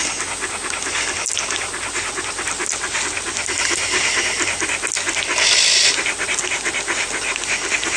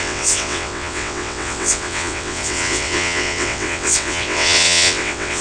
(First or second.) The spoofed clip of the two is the second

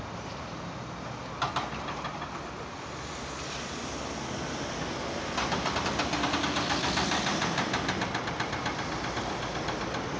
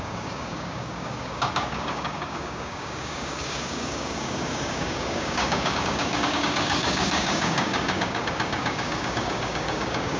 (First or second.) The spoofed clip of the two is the second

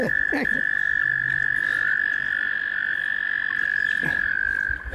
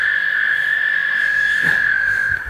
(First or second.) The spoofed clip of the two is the second